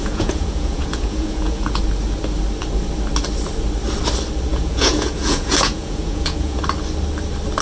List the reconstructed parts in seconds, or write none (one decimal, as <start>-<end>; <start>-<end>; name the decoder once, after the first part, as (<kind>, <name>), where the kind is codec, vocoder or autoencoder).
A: 0.0-1.8 (vocoder, Vocos); 4.5-6.6